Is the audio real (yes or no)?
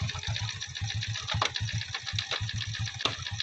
yes